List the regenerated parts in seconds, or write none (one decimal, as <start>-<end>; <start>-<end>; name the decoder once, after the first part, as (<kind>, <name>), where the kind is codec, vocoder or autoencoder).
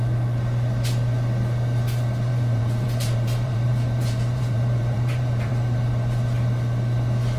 2.3-5.5 (vocoder, BigVGAN v2)